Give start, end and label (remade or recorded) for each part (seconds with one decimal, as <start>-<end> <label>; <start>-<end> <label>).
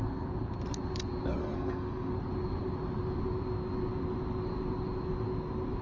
0.0-1.4 recorded; 1.4-2.1 remade; 2.1-5.8 recorded